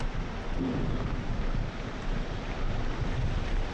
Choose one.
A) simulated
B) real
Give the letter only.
B